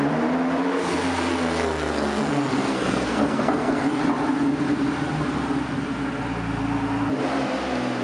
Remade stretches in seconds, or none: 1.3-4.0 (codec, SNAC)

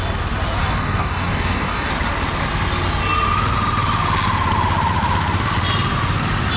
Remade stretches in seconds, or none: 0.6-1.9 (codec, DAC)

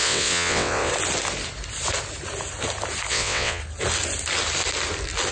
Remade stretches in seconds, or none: 0.0-0.9 (vocoder, WaveNeXt); 3.1-3.6

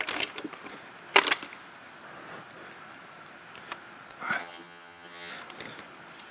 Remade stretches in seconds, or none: 4.4-5.3 (vocoder, HiFi-GAN)